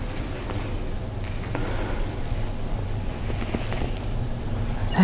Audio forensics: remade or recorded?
recorded